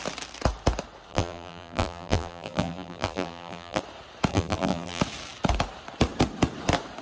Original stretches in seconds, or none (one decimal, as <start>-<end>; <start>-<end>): 0.0-1.1; 3.8-4.3; 5.0-7.0

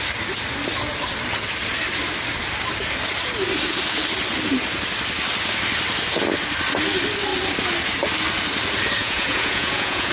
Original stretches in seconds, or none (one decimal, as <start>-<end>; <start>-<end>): 0.0-9.0

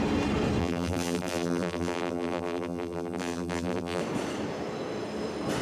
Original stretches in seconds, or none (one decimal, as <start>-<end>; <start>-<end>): 0.0-0.6; 4.0-5.6

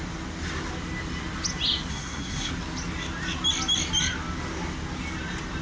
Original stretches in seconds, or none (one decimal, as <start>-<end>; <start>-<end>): 0.0-1.9; 2.5-5.6

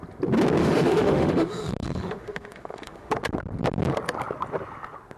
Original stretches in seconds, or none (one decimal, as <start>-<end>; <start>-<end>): 0.0-0.6; 3.1-5.2

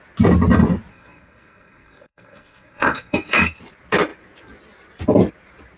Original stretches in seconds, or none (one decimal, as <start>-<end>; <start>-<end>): 0.0-0.9; 3.6-5.8

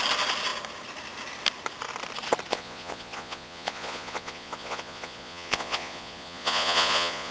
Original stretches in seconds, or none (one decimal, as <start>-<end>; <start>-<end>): 0.0-2.5